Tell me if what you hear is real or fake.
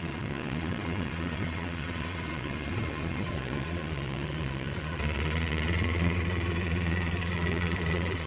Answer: fake